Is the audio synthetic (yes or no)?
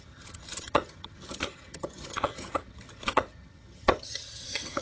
yes